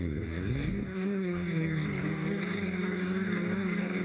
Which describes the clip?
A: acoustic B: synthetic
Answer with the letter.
B